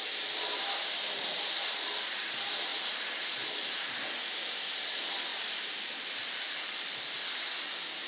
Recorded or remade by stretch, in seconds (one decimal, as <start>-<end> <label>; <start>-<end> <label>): 0.0-5.3 recorded; 5.3-7.0 remade; 7.0-8.1 recorded